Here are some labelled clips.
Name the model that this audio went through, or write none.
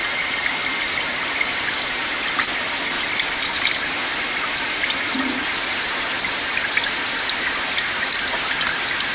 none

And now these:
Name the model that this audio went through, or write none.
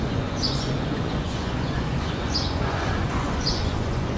vocoder, Vocos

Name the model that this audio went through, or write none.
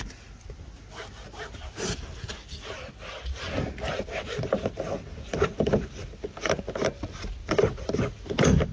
none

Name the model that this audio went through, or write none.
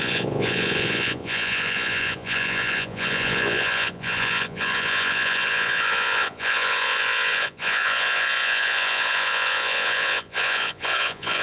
vocoder, Vocos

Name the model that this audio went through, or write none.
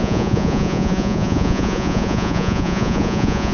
vocoder, Vocos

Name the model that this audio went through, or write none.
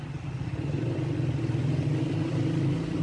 none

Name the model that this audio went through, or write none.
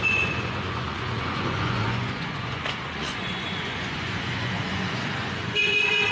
vocoder, Vocos